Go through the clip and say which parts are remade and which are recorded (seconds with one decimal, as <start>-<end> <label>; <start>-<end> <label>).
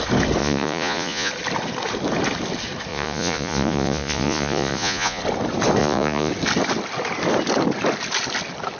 0.0-0.4 recorded; 0.4-1.3 remade; 1.3-2.9 recorded; 2.9-5.2 remade; 5.2-5.8 recorded; 5.8-6.3 remade; 6.3-8.8 recorded